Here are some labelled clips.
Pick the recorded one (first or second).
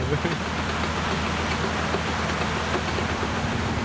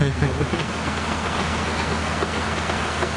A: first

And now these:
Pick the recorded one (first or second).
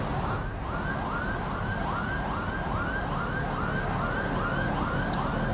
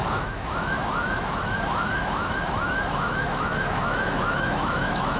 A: first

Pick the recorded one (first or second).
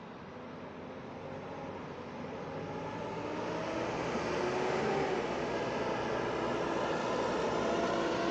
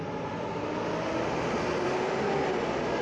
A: first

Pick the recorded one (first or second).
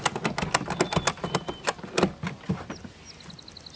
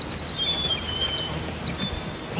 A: first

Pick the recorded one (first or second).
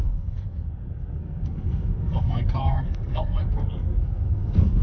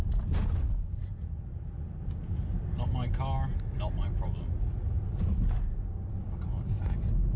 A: second